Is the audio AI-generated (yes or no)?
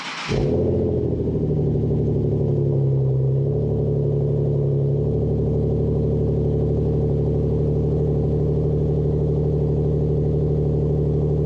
no